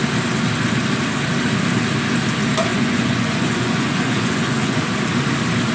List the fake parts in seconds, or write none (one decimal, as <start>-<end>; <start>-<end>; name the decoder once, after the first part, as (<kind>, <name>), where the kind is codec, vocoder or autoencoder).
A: 2.7-4.8 (vocoder, Vocos)